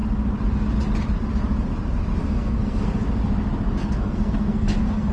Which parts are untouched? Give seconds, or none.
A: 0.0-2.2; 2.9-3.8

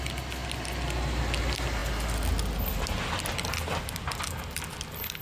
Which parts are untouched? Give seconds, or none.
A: 0.0-5.2

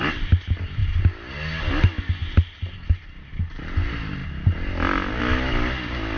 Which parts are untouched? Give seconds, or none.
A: 0.0-6.2